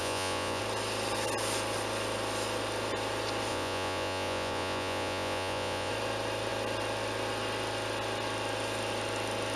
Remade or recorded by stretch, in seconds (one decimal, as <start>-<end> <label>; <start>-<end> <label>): 0.0-0.6 remade; 0.6-3.5 recorded; 3.5-5.9 remade; 5.9-9.6 recorded